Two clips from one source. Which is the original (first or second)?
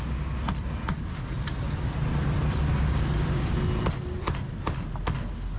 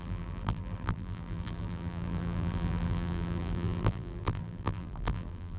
first